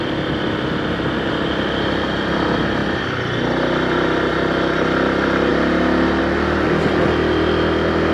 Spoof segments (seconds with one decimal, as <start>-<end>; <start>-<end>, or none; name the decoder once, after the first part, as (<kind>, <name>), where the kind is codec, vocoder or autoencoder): none

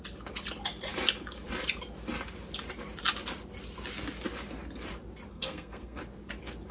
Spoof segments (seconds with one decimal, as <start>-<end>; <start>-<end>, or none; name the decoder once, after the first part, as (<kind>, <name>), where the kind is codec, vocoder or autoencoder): 5.3-6.0 (codec, SNAC)

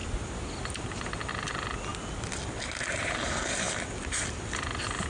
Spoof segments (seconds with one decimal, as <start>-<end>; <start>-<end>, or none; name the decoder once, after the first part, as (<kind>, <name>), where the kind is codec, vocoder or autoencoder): none

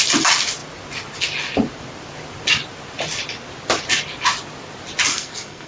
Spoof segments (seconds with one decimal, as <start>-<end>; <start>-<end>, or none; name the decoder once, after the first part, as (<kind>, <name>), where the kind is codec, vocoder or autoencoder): 5.1-5.7 (codec, SNAC)

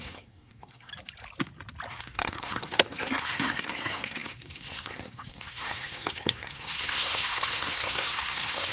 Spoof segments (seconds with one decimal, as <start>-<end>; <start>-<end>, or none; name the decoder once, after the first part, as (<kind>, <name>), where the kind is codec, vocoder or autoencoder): 0.0-0.9 (codec, SNAC); 1.9-8.7

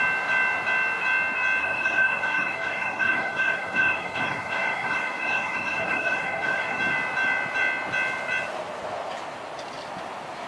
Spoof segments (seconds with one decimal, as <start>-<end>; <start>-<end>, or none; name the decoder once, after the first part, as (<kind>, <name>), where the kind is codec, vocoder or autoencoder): 1.6-6.8 (codec, SNAC)

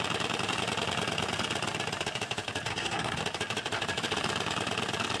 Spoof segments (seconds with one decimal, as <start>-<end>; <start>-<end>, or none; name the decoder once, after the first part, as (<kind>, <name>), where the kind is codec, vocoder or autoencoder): 2.7-3.2 (codec, SNAC)

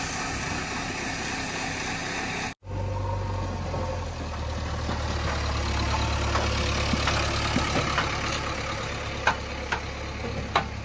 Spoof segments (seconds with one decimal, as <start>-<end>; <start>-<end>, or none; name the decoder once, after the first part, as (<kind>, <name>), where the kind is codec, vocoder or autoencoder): none